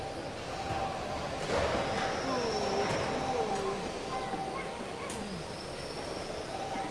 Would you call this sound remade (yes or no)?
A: no